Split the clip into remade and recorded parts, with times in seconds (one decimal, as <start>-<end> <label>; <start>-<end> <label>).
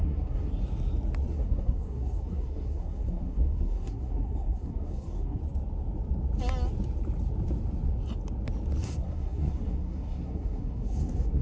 0.0-0.5 remade; 0.5-1.3 recorded; 1.3-5.4 remade; 5.4-8.8 recorded; 8.8-11.4 remade